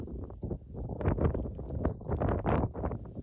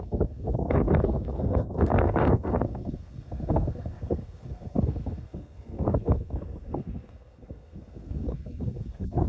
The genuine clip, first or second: first